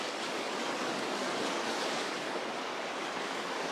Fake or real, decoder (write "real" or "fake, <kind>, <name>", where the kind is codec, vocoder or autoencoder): fake, codec, DAC